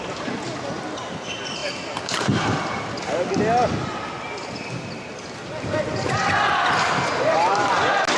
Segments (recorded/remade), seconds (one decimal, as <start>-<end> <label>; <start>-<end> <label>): 0.0-8.2 recorded